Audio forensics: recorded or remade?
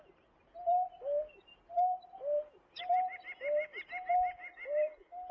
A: recorded